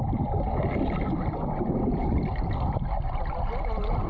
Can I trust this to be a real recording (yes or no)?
yes